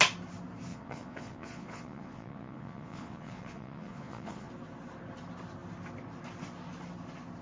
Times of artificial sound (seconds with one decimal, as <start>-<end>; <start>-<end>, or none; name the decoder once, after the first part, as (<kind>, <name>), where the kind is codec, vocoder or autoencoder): 0.7-4.5 (vocoder, Vocos)